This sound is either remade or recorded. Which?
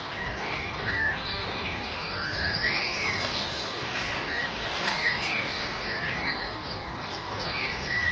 remade